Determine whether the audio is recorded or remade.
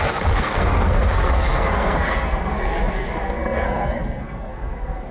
remade